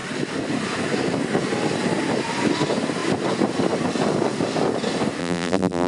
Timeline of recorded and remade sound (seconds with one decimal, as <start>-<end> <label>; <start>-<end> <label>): 0.0-5.2 recorded; 5.2-5.9 remade